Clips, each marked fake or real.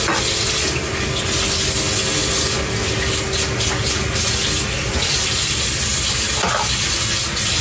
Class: real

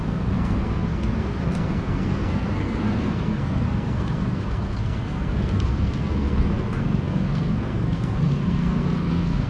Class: fake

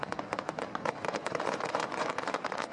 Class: fake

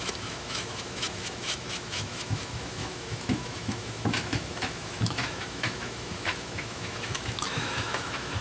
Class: fake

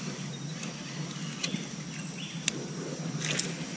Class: real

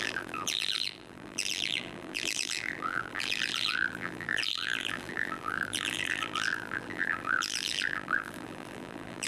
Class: fake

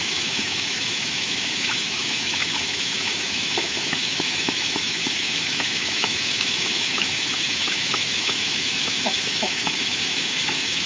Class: fake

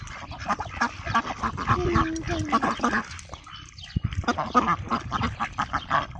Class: real